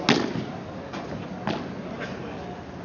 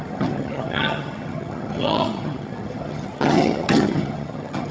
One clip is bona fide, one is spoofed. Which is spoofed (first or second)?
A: second